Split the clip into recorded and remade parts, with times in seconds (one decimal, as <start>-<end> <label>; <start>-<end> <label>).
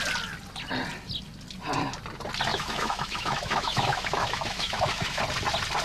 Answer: 0.0-2.5 recorded; 2.5-5.2 remade; 5.2-5.8 recorded